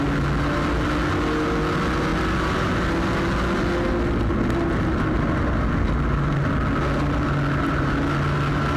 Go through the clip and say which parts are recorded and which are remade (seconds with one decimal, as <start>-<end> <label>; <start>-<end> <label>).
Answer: 0.0-8.8 recorded